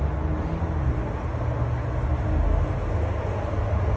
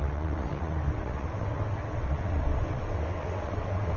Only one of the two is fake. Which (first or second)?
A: second